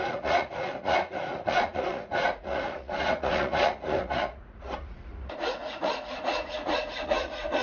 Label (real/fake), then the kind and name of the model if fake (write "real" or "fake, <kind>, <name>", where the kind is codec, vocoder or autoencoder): fake, vocoder, Vocos